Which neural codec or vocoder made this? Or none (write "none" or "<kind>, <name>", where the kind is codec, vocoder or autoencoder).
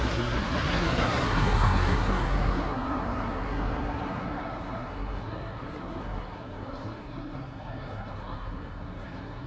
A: codec, SNAC